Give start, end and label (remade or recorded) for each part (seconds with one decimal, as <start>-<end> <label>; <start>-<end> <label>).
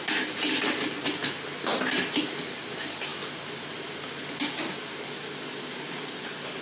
0.0-6.6 recorded